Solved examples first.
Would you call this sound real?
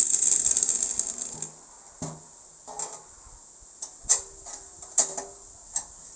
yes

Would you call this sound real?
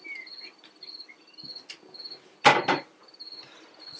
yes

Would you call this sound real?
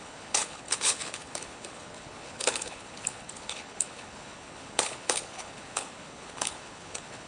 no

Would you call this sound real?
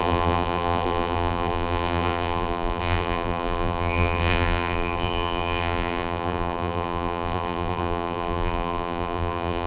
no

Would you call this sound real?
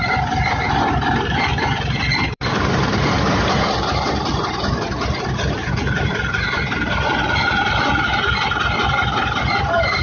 no